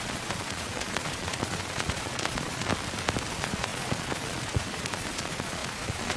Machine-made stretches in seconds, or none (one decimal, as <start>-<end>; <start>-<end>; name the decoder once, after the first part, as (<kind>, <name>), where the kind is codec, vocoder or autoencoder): 0.0-2.7 (vocoder, Vocos); 3.3-6.2